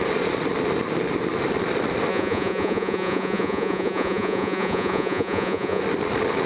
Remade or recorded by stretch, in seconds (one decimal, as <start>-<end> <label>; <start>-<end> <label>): 0.0-2.1 recorded; 2.1-5.8 remade; 5.8-6.5 recorded